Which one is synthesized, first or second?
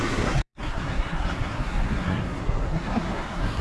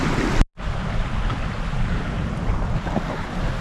first